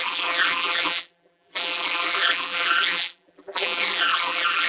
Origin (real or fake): fake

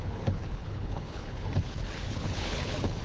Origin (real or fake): fake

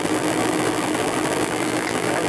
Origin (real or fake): fake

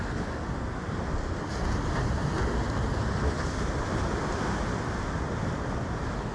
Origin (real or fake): real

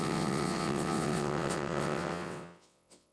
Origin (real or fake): fake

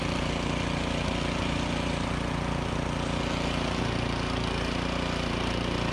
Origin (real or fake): real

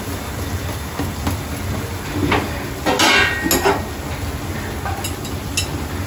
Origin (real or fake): real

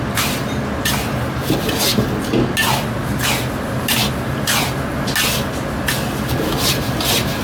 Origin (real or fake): real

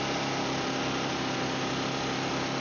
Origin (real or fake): real